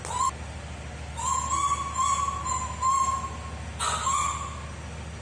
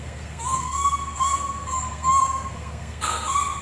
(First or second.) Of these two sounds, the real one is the first